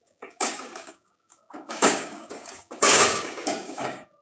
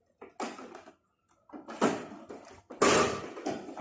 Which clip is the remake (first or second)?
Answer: first